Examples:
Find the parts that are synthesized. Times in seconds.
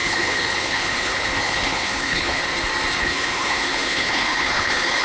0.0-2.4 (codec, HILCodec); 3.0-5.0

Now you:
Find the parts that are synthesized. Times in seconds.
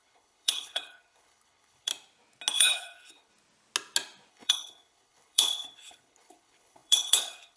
0.0-1.9 (codec, HILCodec); 2.5-3.3; 4.3-7.6